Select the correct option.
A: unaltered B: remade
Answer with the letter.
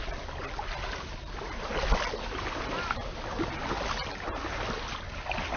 A